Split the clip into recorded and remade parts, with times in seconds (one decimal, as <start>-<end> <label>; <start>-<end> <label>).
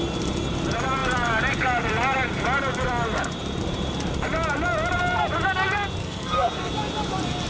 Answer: 0.0-6.0 recorded; 6.0-6.7 remade; 6.7-7.5 recorded